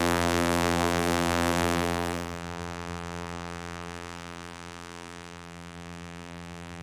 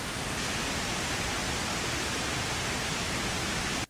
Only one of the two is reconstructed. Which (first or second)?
first